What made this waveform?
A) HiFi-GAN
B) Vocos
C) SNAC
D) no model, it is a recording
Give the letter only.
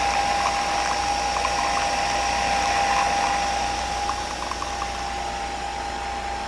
D